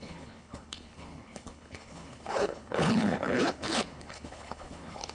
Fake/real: fake